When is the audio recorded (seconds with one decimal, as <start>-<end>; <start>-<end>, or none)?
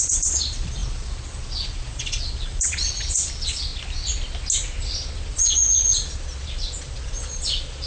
3.7-5.3